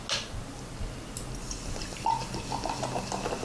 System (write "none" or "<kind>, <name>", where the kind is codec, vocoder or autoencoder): none